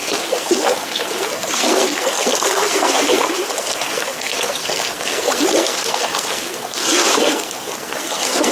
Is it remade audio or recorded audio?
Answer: remade